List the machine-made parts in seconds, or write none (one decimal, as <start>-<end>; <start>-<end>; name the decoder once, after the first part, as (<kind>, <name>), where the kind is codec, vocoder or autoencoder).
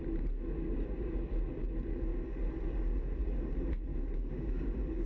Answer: 3.9-4.6 (autoencoder, DAC-VAE)